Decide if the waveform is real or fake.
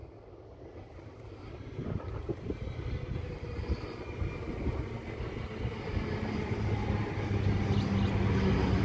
real